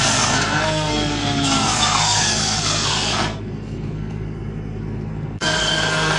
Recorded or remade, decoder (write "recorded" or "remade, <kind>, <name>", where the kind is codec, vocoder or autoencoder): remade, codec, SNAC